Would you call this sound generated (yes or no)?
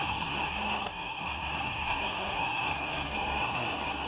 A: yes